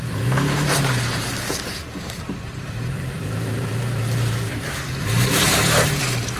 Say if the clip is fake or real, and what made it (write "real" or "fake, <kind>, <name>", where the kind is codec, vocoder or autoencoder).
fake, vocoder, BigVGAN v2